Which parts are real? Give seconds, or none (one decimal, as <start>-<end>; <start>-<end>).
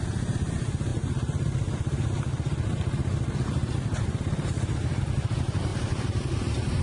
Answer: none